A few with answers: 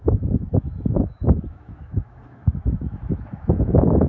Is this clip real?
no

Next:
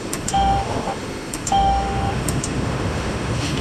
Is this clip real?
no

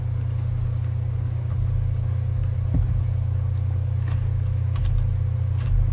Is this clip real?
yes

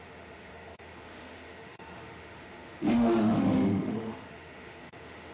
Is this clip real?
no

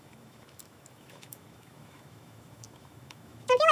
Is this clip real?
no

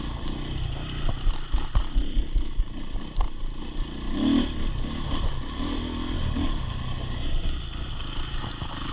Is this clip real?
yes